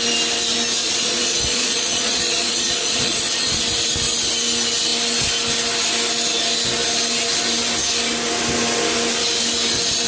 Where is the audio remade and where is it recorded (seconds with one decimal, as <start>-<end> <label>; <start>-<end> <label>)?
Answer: 0.0-0.8 recorded; 0.8-3.6 remade; 3.6-10.1 recorded